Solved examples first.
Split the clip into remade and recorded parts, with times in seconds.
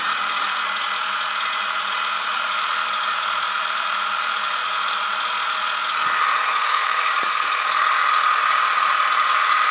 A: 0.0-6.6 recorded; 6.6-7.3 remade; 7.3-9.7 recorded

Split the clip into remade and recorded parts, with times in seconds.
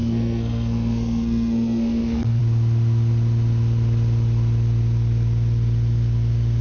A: 0.0-2.4 remade; 2.4-6.6 recorded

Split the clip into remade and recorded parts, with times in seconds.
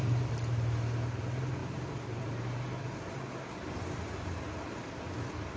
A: 0.0-1.6 recorded; 1.6-3.1 remade; 3.1-5.6 recorded